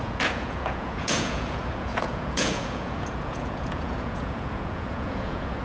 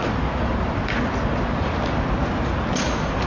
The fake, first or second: first